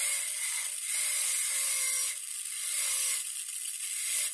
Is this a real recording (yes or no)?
yes